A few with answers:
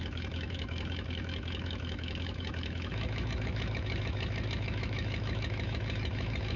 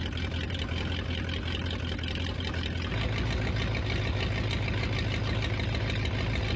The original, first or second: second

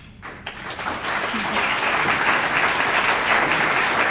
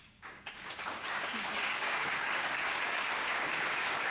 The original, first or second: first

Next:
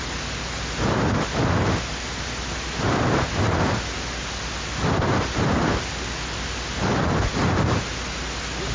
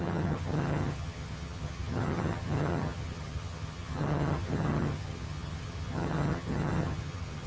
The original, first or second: first